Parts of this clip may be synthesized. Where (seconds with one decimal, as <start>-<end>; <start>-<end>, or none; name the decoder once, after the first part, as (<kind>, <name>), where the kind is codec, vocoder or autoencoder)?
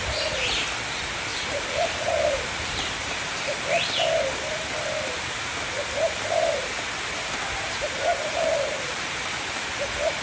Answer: 1.3-3.8 (vocoder, BigVGAN v2); 8.1-9.6